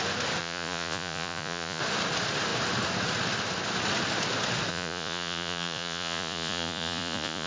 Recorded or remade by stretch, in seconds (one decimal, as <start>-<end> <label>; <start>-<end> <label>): 0.0-0.4 recorded; 0.4-1.8 remade; 1.8-4.7 recorded; 4.7-7.5 remade